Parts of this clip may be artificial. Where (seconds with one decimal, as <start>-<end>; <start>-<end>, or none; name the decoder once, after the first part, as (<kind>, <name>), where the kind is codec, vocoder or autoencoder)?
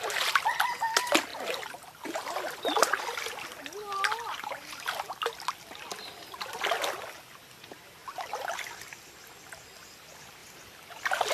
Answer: none